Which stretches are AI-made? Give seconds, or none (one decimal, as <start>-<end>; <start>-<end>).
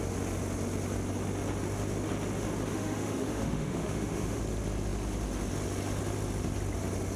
2.7-4.4